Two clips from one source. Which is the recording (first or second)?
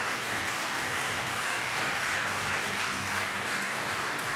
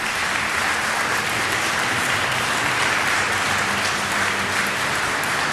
second